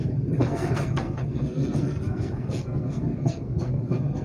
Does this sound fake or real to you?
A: fake